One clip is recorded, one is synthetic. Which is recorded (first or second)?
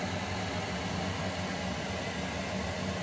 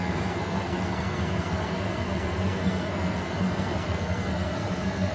first